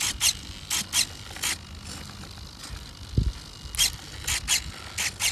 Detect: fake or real real